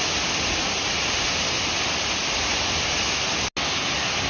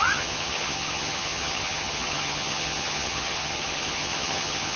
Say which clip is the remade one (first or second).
second